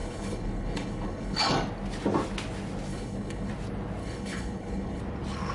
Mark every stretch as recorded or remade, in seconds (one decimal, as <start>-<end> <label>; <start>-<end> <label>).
0.0-1.5 remade; 1.5-2.9 recorded; 2.9-3.5 remade; 3.5-4.0 recorded; 4.0-5.0 remade; 5.0-5.5 recorded